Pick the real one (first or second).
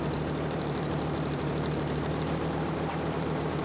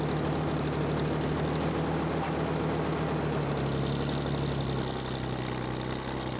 second